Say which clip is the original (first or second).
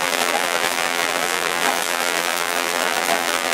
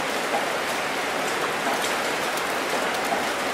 second